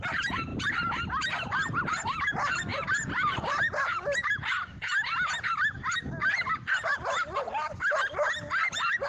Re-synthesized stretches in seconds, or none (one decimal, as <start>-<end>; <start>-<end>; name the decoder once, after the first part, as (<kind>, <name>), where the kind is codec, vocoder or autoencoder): none